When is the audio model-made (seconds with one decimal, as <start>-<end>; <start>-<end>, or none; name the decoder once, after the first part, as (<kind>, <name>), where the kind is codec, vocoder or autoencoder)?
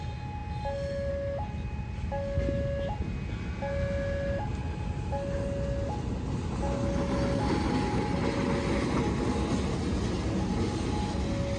none